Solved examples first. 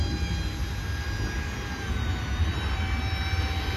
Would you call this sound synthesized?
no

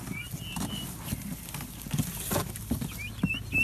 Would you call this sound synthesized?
no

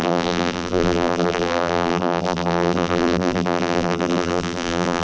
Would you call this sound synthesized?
yes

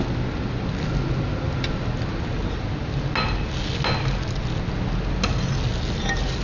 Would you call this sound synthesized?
no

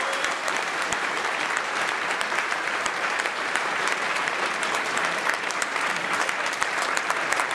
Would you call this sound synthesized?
yes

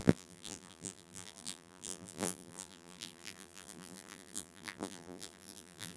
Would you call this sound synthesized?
yes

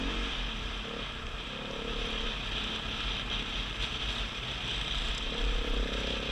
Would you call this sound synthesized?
no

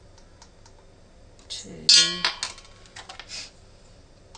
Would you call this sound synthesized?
no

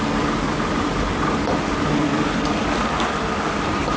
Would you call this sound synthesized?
no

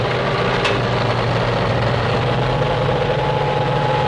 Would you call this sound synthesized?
no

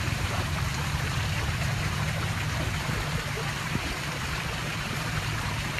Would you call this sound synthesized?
yes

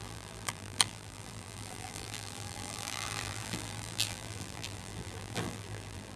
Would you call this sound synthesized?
yes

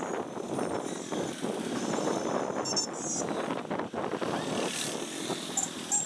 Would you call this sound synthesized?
no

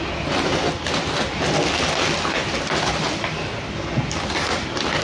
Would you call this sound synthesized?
no